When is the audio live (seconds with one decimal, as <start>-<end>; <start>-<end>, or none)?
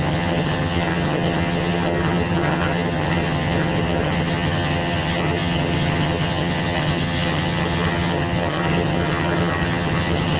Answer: none